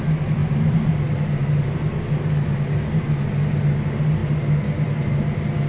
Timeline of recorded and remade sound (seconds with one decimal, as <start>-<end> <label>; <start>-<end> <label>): 0.0-0.4 recorded; 0.4-0.9 remade; 0.9-5.7 recorded